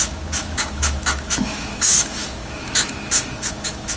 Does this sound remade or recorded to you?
remade